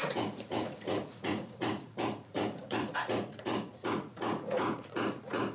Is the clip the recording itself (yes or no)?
no